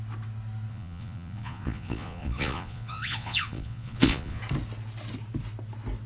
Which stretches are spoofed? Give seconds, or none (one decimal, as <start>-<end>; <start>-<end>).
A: 0.7-4.4